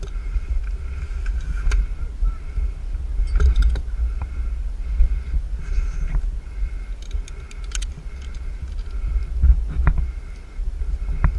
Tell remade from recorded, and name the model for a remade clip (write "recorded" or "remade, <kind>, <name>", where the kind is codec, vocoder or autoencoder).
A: recorded